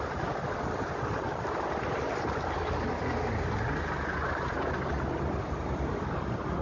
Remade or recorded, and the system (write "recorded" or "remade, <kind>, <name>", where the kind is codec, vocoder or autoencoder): recorded